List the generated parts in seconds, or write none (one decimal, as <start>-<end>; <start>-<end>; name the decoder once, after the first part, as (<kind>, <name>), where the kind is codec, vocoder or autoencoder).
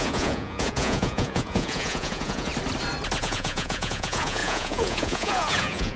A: 0.0-2.5 (vocoder, Vocos); 3.2-6.0